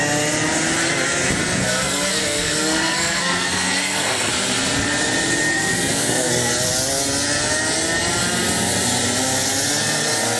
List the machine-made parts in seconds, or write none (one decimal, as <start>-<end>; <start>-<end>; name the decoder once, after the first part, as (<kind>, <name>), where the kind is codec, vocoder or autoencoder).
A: 1.4-4.3 (codec, SNAC); 5.5-6.5

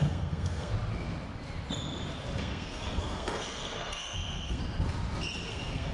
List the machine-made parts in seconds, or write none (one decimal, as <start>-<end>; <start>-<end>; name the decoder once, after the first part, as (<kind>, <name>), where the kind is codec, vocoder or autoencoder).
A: 0.0-0.7 (codec, SNAC); 2.4-4.6; 5.5-5.9

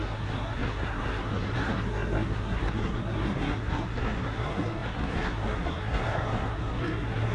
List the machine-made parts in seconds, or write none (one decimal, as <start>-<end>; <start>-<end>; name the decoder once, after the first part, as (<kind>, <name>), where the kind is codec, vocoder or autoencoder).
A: 0.0-7.3 (codec, SNAC)

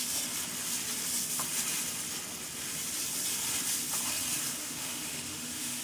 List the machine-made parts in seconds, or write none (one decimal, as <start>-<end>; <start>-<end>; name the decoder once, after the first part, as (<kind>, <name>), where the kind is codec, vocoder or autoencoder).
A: 4.6-5.8 (autoencoder, DAC-VAE)

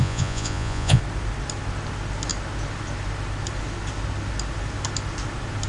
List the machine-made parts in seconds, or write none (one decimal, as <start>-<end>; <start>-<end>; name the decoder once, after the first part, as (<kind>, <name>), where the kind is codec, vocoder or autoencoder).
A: 0.0-1.0 (vocoder, Vocos)

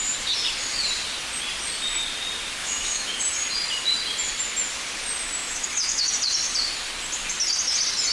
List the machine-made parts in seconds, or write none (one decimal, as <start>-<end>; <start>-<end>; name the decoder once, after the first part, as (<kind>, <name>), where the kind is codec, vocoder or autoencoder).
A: 2.6-3.2 (autoencoder, DAC-VAE); 5.4-6.1

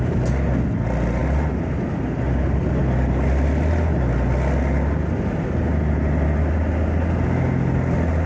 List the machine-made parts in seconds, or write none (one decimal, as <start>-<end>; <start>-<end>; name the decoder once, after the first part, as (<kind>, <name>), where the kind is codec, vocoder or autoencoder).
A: none